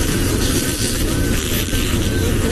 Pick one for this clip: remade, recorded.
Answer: remade